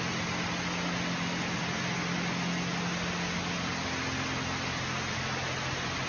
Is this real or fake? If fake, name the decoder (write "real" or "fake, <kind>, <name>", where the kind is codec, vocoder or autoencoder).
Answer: real